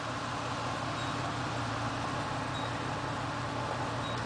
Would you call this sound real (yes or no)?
yes